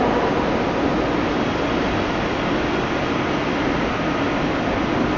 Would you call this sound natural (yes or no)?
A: yes